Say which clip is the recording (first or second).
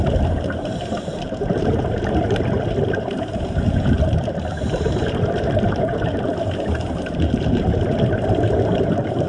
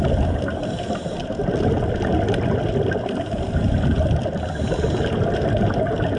second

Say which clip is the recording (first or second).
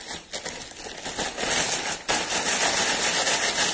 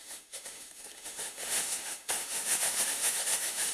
first